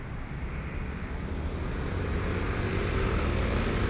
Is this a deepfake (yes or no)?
no